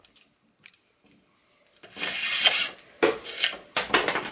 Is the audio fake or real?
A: real